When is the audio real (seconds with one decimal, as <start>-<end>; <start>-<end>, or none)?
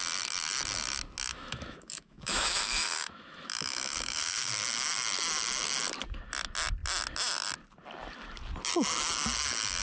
0.0-1.3; 4.5-9.8